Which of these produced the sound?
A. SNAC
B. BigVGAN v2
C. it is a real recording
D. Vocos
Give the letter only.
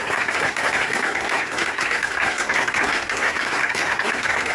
A